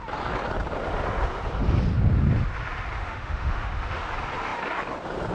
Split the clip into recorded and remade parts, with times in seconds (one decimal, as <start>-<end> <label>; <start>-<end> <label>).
0.0-3.0 recorded; 3.0-4.1 remade; 4.1-5.3 recorded